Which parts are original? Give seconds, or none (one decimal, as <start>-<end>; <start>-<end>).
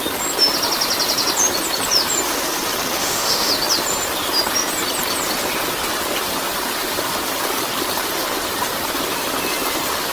0.0-3.0; 3.5-10.1